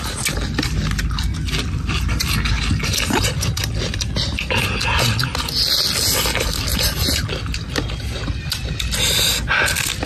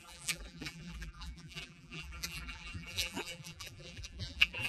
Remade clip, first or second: second